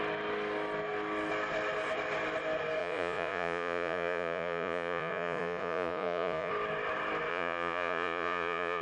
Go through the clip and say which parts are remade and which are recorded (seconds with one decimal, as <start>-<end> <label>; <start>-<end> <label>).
0.0-2.8 recorded; 2.8-6.5 remade; 6.5-7.3 recorded; 7.3-8.8 remade